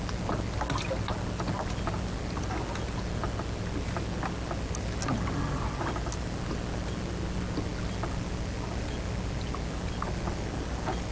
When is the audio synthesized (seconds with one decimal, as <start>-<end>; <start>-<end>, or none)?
none

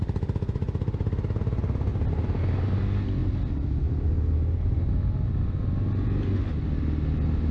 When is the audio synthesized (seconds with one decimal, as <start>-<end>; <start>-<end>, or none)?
1.9-2.4

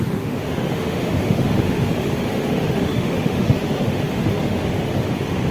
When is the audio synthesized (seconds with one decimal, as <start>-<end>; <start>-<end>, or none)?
0.0-5.5

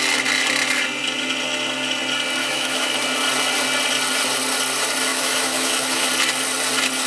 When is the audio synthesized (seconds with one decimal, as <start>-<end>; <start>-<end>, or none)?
2.4-2.9; 5.1-6.1

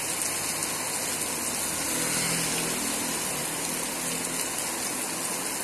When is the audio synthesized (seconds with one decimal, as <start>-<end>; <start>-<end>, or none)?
none